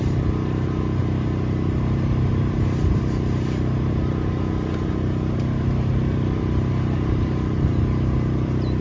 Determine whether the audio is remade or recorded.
remade